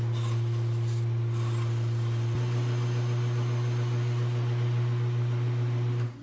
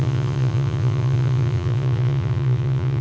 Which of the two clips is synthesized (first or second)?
second